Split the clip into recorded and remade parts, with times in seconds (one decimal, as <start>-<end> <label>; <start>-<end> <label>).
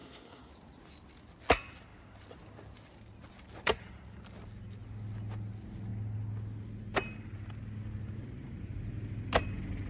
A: 0.0-0.5 remade; 0.5-9.9 recorded